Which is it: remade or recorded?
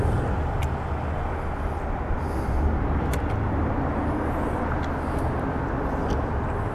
recorded